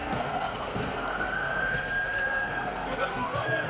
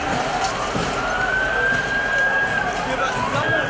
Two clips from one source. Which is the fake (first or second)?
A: first